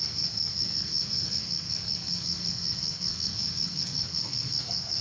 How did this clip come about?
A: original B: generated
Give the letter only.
B